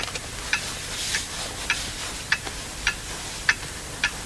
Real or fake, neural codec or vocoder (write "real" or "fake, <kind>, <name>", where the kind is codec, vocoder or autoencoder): fake, vocoder, BigVGAN v2